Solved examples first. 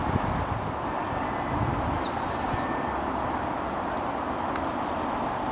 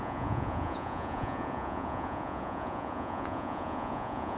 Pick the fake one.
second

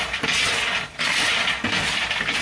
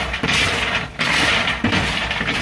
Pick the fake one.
second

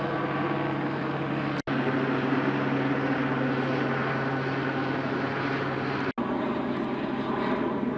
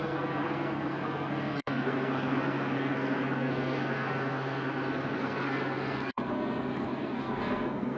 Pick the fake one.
second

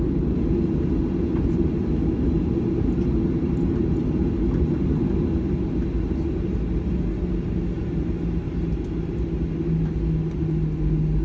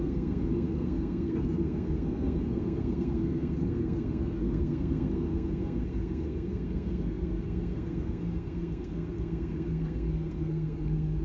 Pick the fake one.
second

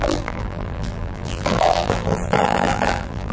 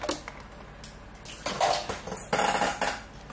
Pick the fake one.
first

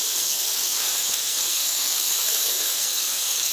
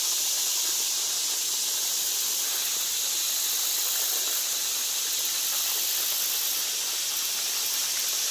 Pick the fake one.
first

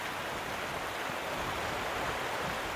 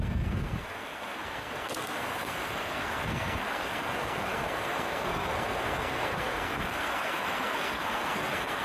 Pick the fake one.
second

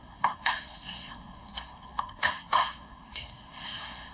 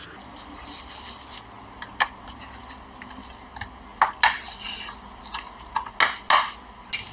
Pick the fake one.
first